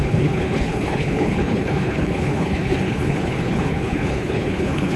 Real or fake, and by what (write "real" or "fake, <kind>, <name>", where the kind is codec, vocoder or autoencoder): fake, codec, HILCodec